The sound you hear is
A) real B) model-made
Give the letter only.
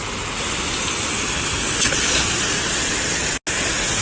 A